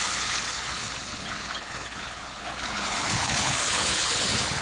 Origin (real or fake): fake